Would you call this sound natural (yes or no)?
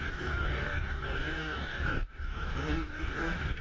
no